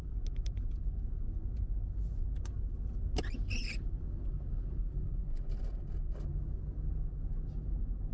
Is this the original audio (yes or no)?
yes